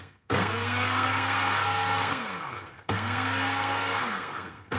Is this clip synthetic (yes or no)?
yes